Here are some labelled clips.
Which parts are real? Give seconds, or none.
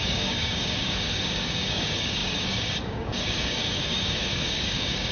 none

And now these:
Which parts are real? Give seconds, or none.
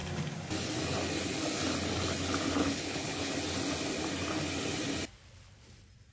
0.0-2.6; 3.3-6.1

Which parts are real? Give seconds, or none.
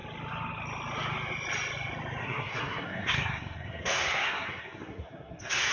0.0-2.2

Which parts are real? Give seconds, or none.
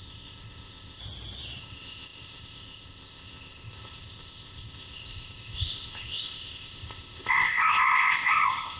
1.0-1.6